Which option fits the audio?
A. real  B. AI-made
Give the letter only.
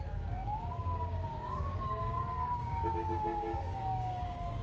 B